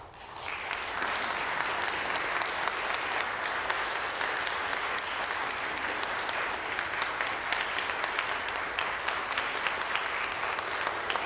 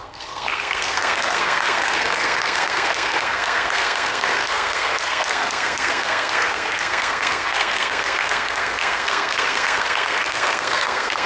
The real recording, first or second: first